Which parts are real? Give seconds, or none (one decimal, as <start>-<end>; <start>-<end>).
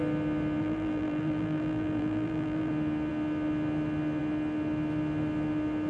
0.0-0.6; 2.7-5.9